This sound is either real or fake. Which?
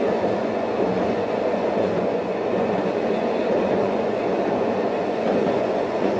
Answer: fake